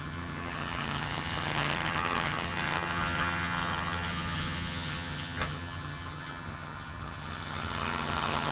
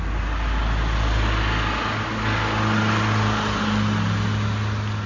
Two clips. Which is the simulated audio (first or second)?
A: first